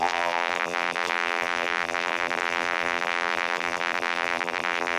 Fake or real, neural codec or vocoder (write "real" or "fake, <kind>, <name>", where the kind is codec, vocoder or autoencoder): fake, vocoder, BigVGAN v2